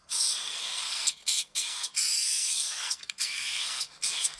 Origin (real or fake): fake